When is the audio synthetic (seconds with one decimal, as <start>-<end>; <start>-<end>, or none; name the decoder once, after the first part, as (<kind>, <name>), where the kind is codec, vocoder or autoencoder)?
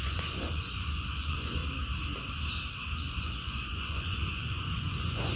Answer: 0.0-1.6 (vocoder, Vocos); 3.1-5.4